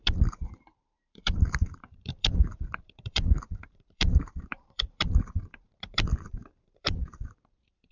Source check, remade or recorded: remade